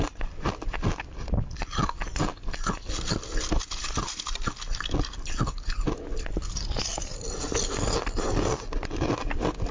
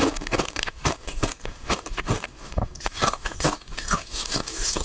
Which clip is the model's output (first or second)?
second